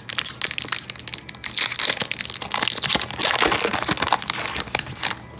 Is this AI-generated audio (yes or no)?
no